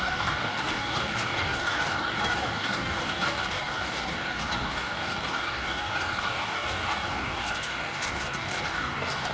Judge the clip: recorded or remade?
remade